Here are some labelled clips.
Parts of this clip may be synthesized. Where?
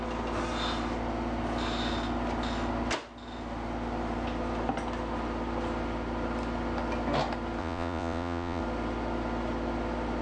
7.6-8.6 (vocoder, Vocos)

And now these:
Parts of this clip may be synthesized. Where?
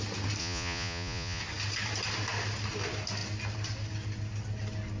0.4-1.4 (vocoder, Vocos)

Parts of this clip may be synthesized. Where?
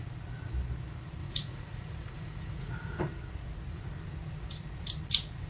1.2-3.0 (vocoder, Vocos)